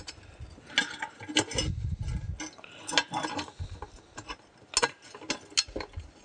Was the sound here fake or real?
real